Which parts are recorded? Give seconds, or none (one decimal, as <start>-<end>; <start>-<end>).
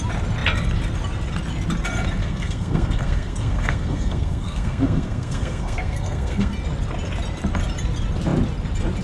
0.0-2.2; 6.5-9.0